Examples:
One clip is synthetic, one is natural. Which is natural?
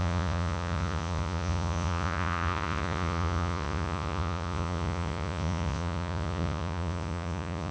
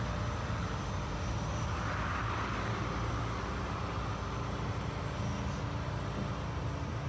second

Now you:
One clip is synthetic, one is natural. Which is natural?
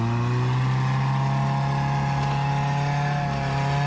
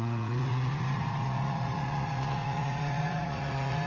first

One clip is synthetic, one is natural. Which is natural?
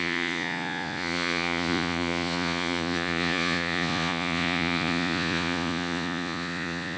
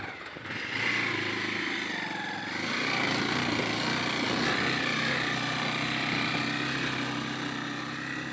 second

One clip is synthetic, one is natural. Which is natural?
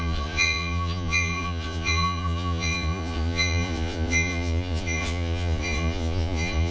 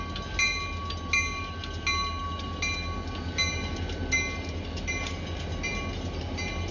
second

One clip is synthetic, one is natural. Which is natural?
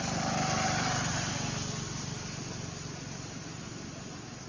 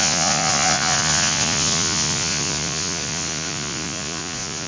first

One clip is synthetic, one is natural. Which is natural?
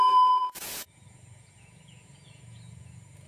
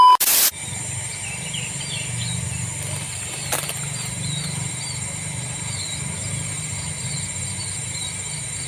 second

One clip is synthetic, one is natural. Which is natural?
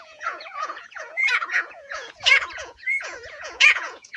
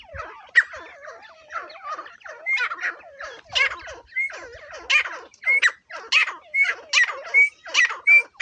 second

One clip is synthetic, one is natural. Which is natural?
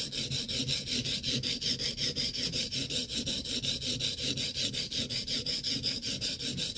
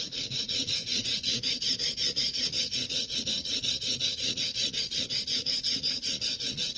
first